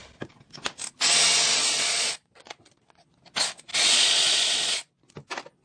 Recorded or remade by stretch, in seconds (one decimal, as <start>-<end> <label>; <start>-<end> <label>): 0.0-1.6 recorded; 1.6-3.2 remade; 3.2-3.7 recorded; 3.7-4.7 remade; 4.7-5.6 recorded

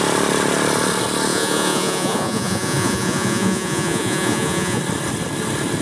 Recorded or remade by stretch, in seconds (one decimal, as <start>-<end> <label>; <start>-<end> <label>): 0.0-1.3 recorded; 1.3-4.8 remade; 4.8-5.8 recorded

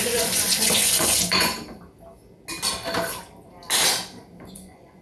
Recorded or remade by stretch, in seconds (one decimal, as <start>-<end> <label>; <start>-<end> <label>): 0.0-1.5 remade; 1.5-4.5 recorded; 4.5-5.0 remade

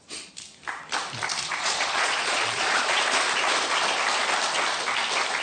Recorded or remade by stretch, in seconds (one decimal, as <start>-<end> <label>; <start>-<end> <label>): 0.0-1.5 recorded; 1.5-3.0 remade; 3.0-5.4 recorded

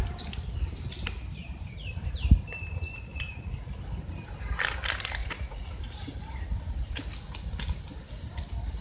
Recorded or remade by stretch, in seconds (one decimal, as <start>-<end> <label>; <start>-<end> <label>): 0.0-3.1 recorded; 3.1-3.7 remade; 3.7-5.2 recorded; 5.2-5.8 remade; 5.8-8.8 recorded